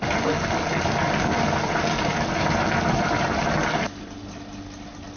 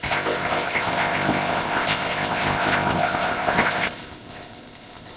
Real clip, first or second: first